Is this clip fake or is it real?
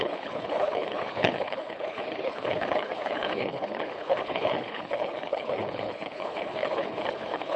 fake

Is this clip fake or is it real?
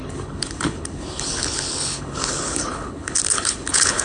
fake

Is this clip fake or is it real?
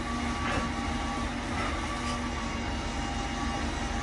real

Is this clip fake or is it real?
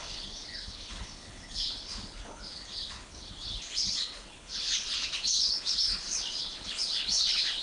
fake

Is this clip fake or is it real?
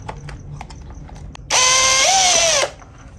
real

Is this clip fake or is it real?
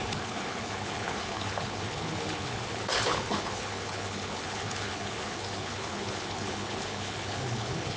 fake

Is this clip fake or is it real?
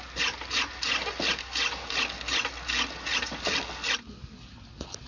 real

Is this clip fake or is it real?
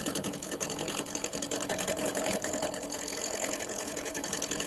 fake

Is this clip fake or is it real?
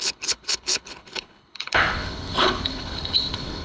fake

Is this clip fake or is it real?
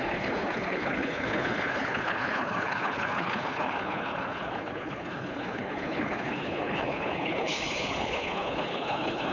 fake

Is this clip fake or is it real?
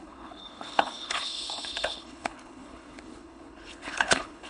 fake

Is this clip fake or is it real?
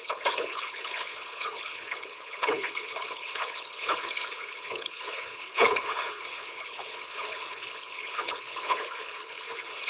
fake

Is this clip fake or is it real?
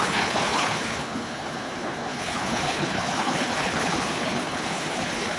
fake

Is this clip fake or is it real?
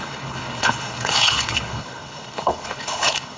fake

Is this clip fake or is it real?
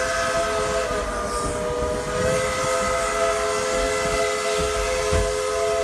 real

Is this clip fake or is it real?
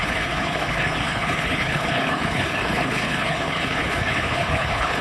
fake